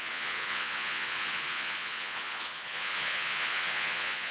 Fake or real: fake